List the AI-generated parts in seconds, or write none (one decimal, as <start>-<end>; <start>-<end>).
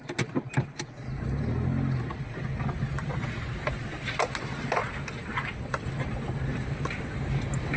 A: 4.8-7.2